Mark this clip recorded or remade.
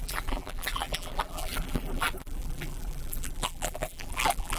remade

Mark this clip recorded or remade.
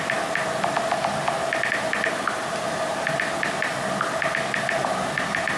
recorded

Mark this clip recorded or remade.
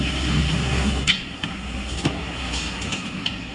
remade